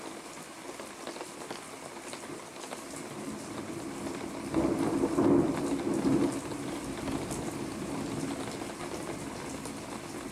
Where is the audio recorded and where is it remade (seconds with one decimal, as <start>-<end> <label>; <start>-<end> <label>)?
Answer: 0.0-10.3 recorded